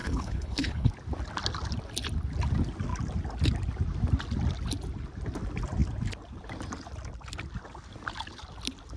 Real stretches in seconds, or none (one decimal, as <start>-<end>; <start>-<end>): 0.9-9.0